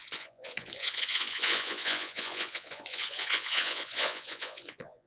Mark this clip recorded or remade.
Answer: remade